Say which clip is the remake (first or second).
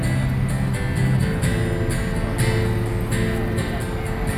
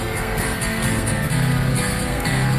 second